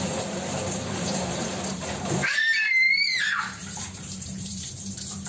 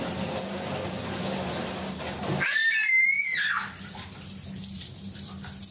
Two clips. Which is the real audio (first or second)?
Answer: second